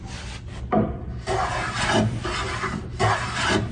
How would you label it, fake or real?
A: real